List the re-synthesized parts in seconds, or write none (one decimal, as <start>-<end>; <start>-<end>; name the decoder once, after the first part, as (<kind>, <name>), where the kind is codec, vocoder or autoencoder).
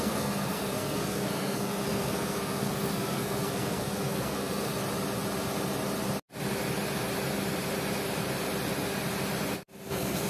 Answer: 0.0-4.7 (codec, SNAC); 9.9-10.3